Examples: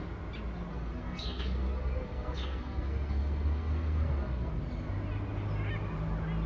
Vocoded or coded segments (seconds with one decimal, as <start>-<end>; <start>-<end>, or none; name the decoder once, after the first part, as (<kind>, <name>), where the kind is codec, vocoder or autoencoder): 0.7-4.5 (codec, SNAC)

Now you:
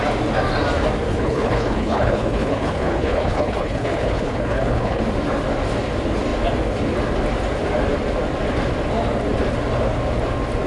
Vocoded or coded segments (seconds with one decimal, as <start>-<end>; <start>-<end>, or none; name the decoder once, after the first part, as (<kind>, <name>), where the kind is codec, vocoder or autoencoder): 1.1-5.0 (codec, HILCodec)

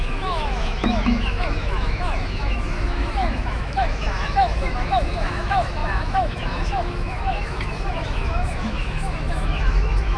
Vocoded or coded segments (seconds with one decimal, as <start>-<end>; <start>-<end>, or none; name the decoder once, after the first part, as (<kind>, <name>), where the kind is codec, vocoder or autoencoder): 0.0-10.2 (autoencoder, DAC-VAE)

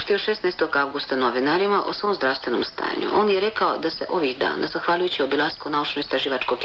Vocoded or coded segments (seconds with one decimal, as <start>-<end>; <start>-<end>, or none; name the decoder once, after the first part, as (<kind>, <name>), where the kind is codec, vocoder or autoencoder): none

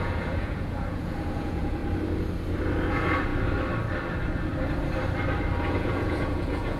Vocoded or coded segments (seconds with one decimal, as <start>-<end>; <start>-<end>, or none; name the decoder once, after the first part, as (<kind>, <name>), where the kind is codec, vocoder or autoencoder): 0.0-1.8 (vocoder, Vocos); 2.9-3.3; 5.6-6.8

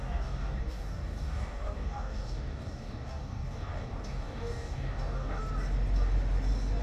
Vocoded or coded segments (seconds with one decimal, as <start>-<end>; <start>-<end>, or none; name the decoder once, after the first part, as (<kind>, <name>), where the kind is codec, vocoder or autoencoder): 0.0-5.4 (codec, DAC)

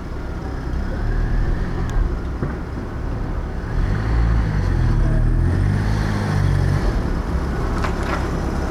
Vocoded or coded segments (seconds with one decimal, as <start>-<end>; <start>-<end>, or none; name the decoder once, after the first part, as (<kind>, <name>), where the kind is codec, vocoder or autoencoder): none